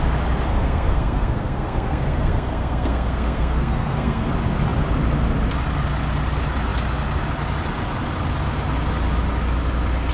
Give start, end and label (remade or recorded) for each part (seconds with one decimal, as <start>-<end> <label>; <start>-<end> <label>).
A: 0.0-0.5 recorded; 0.5-4.3 remade; 4.3-10.1 recorded